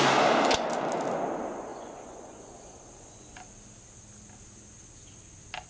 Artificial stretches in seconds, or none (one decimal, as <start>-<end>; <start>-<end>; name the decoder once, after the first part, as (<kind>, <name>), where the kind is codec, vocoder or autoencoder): 1.7-3.3 (vocoder, Vocos)